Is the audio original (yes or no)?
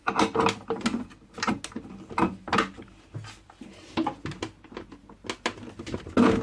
yes